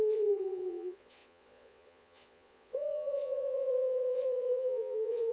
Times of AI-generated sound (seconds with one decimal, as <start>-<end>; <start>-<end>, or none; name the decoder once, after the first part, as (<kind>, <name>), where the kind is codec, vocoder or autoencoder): 0.0-5.3 (vocoder, Vocos)